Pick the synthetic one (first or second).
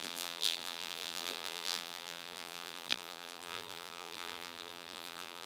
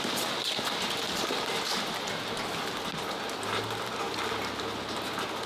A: first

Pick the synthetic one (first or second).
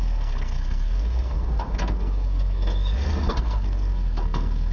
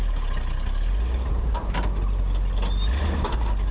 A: first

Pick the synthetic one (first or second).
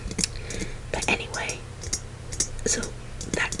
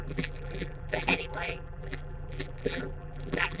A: second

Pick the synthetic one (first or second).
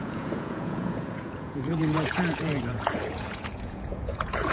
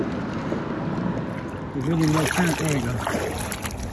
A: first